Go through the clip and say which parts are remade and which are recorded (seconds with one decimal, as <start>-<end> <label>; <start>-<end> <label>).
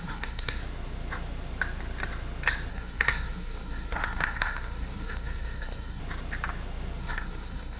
0.0-0.6 remade; 0.6-2.7 recorded; 2.7-6.0 remade; 6.0-7.0 recorded; 7.0-7.8 remade